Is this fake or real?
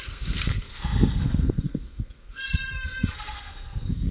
fake